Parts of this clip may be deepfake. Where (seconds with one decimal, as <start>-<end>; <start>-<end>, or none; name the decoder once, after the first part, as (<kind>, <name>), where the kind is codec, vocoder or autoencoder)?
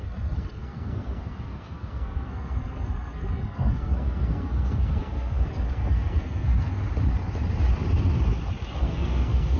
0.0-6.7 (codec, SNAC); 8.8-9.6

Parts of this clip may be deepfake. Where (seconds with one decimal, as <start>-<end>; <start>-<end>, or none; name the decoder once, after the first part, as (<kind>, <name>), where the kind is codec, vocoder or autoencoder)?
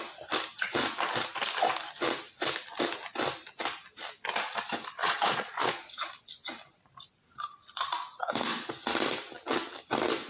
5.0-6.1 (vocoder, Vocos)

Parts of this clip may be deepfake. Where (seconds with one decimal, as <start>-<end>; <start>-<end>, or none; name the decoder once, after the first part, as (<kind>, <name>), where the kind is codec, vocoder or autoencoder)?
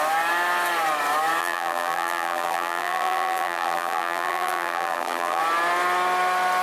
1.4-5.4 (vocoder, BigVGAN v2)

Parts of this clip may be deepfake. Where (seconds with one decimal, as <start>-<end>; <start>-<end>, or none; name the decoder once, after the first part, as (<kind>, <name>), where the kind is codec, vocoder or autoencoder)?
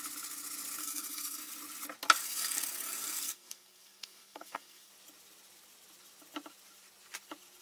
0.8-1.5 (codec, SNAC); 2.2-4.9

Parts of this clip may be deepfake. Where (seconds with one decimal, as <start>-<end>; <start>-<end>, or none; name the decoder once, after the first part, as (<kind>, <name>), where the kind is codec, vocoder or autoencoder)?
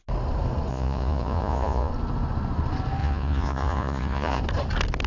0.7-1.9 (vocoder, Vocos); 3.0-4.4